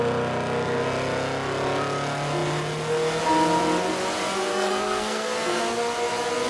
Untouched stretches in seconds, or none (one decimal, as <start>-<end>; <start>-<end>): 0.0-4.5; 5.6-6.5